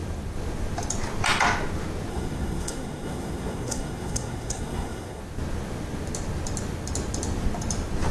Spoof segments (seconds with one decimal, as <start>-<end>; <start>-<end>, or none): 2.1-5.2